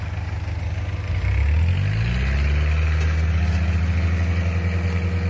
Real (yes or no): yes